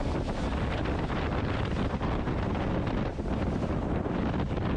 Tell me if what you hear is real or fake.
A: real